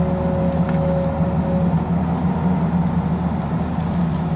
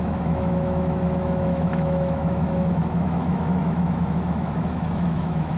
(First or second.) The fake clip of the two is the second